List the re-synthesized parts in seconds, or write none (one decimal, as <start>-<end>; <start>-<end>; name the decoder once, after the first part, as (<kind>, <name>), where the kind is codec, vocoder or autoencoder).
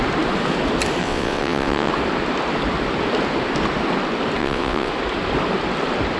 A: 1.0-1.9 (vocoder, WaveNeXt); 4.4-4.9